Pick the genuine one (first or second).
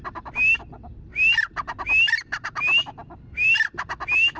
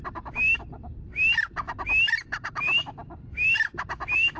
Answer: first